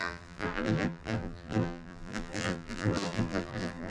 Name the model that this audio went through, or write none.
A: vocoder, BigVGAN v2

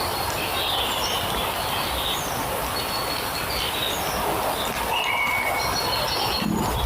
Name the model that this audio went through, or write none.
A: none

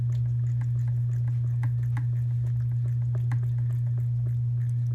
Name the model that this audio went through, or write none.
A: none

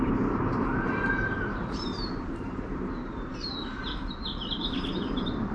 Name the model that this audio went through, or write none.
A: vocoder, BigVGAN v2